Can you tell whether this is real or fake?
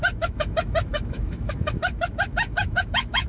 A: fake